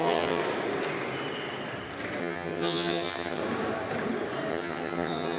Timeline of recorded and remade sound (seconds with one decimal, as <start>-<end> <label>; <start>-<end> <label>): 0.0-0.4 remade; 0.4-2.2 recorded; 2.2-3.4 remade; 3.4-4.5 recorded; 4.5-5.4 remade